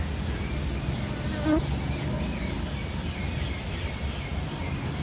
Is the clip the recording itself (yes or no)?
yes